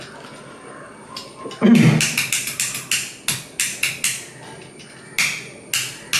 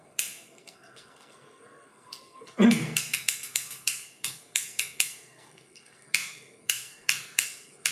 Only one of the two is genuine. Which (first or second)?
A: first